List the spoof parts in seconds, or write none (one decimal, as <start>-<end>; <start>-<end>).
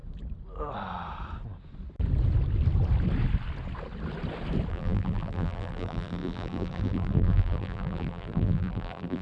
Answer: 4.7-9.2